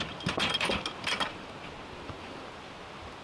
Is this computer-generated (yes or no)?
no